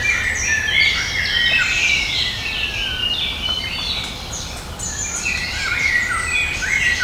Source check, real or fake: real